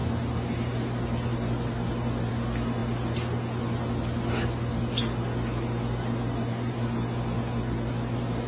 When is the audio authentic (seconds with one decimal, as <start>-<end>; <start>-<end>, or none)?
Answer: 0.0-8.5